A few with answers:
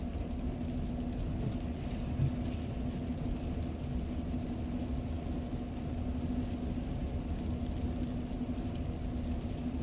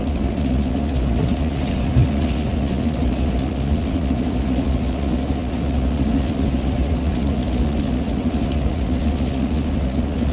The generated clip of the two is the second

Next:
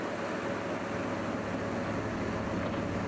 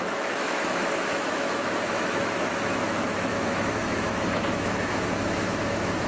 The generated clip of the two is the second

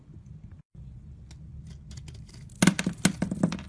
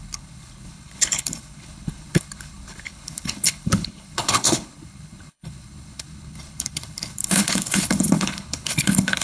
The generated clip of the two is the second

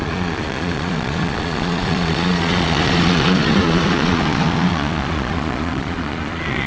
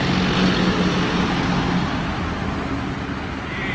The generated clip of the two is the first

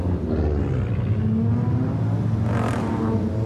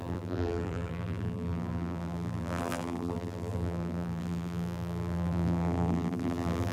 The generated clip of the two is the second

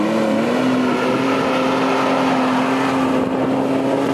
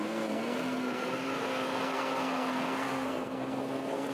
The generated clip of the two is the second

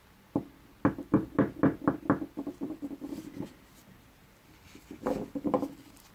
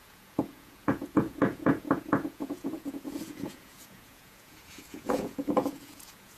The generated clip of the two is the second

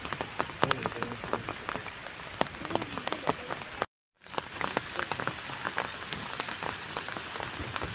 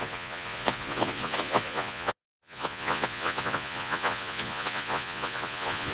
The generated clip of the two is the second